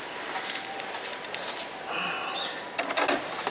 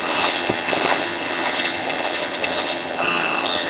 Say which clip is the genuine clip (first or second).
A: first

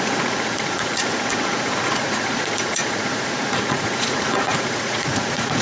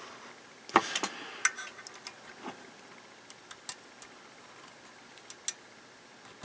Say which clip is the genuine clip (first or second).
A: second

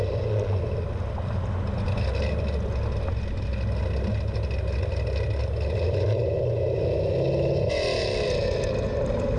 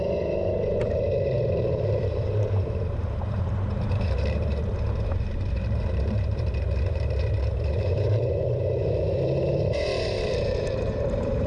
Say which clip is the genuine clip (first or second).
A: first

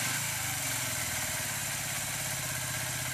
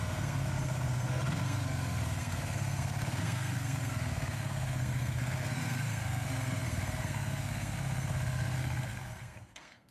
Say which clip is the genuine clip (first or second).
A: first